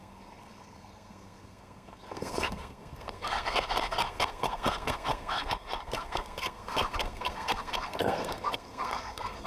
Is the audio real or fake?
fake